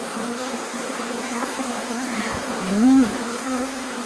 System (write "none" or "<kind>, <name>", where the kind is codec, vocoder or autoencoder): codec, SNAC